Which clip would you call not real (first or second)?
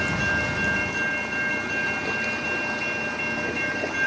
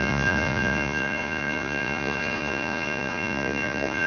second